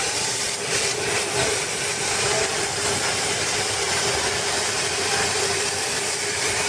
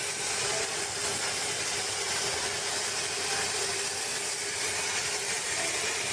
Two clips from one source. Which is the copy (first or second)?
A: first